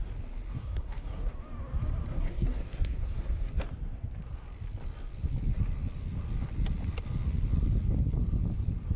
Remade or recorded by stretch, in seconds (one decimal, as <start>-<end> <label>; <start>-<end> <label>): 0.0-0.5 recorded; 0.5-1.3 remade; 1.3-2.1 recorded; 2.1-3.5 remade; 3.5-9.0 recorded